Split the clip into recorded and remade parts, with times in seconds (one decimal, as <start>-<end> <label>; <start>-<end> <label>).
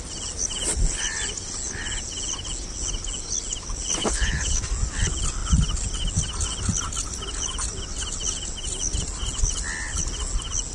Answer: 0.0-4.0 recorded; 4.0-4.6 remade; 4.6-10.7 recorded